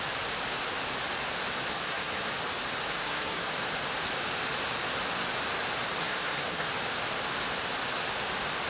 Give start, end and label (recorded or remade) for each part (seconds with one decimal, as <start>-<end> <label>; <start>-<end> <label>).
0.0-1.7 recorded; 1.7-2.3 remade; 2.3-2.9 recorded; 2.9-3.5 remade; 3.5-6.0 recorded; 6.0-6.7 remade; 6.7-8.7 recorded